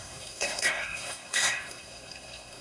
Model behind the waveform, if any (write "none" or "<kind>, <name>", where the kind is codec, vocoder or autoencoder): codec, SNAC